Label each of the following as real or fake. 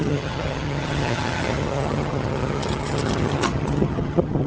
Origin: fake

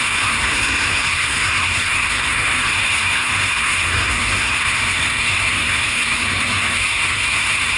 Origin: fake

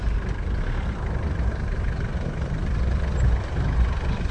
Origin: real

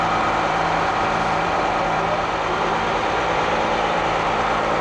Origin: fake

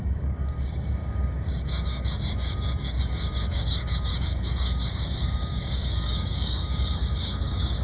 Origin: fake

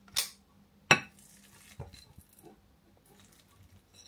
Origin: real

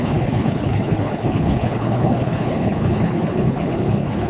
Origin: fake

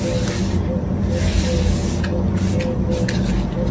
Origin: real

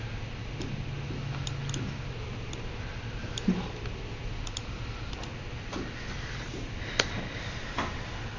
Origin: real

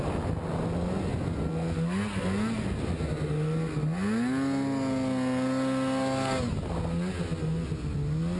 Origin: real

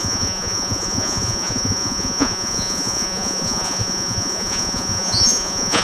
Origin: fake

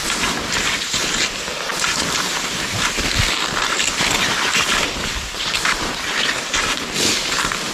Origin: fake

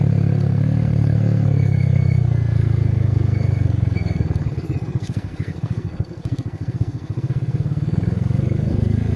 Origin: fake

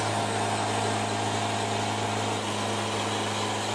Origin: real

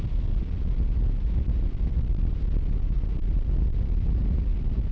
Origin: real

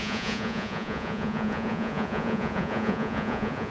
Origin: fake